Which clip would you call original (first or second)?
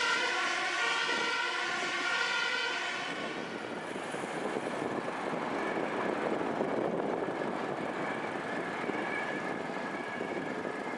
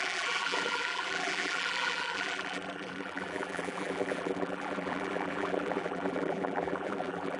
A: first